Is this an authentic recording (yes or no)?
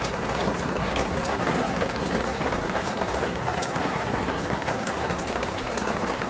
no